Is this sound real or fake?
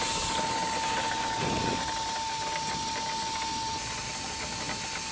real